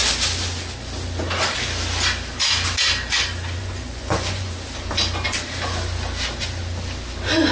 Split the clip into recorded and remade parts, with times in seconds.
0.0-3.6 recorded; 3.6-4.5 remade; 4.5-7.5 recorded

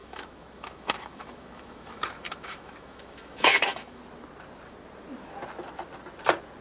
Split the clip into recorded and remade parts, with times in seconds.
0.0-4.0 remade; 4.0-6.6 recorded